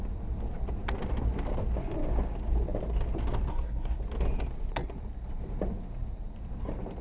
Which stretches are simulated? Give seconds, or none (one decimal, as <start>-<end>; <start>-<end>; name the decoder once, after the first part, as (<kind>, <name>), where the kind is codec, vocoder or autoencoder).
3.5-4.0 (codec, SNAC)